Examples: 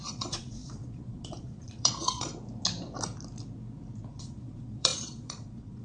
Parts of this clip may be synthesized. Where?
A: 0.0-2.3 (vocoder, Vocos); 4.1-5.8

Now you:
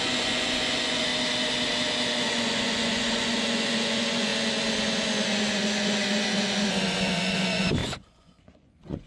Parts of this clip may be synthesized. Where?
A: 0.0-1.1 (vocoder, Vocos); 2.1-4.3; 4.8-9.1

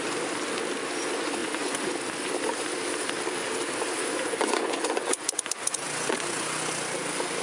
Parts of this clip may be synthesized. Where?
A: 1.4-1.9 (vocoder, Vocos); 4.2-6.7

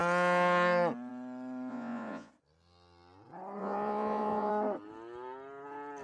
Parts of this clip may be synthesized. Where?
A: 1.7-2.3 (vocoder, Vocos); 3.6-4.5

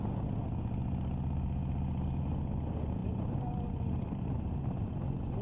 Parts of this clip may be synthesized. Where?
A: none

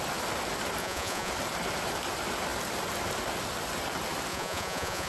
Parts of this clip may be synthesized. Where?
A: 0.8-1.3 (vocoder, Vocos); 4.3-5.1

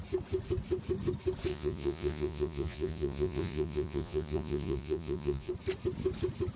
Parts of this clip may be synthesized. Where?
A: 1.5-5.5 (vocoder, Vocos)